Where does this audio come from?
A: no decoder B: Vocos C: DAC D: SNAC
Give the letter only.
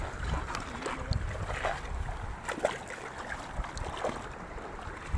A